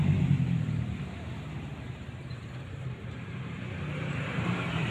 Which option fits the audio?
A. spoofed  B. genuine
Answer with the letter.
A